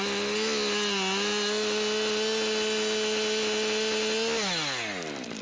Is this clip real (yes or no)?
yes